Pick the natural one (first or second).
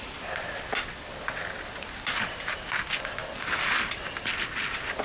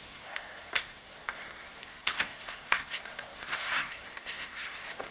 first